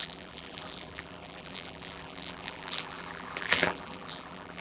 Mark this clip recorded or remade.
remade